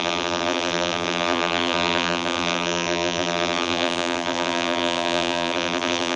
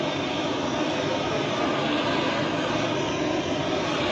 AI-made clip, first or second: first